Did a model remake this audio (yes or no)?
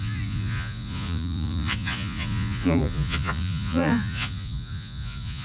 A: yes